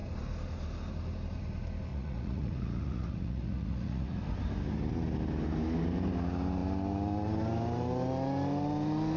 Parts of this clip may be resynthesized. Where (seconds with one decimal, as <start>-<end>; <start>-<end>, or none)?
1.9-4.2